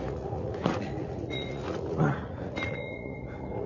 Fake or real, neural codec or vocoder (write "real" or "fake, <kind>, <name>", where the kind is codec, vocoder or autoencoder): fake, vocoder, Vocos